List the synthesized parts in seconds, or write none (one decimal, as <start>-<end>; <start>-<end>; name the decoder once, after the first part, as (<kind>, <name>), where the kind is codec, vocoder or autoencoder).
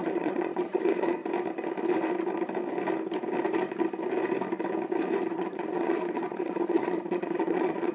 0.0-1.2 (vocoder, Vocos); 5.3-7.9